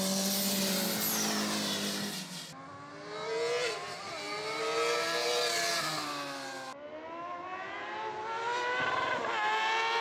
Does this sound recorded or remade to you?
recorded